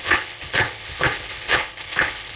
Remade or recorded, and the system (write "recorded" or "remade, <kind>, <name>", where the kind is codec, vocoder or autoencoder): remade, codec, HILCodec